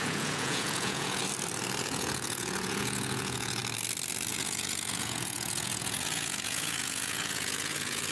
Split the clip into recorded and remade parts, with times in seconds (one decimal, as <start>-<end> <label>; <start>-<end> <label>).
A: 0.0-1.2 remade; 1.2-1.8 recorded; 1.8-3.6 remade; 3.6-4.3 recorded; 4.3-8.1 remade